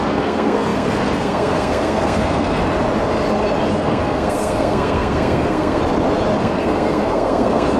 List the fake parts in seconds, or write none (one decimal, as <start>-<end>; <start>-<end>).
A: 0.0-2.6; 3.7-5.8; 6.4-7.8